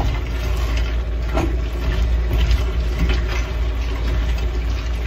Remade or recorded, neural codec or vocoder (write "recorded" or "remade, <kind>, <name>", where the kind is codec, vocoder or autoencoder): recorded